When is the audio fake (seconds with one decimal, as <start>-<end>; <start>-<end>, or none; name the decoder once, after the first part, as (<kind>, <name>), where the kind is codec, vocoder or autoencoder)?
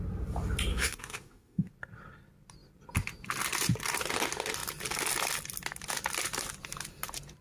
0.7-1.7 (autoencoder, DAC-VAE)